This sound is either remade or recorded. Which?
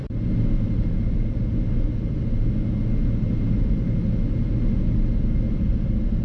recorded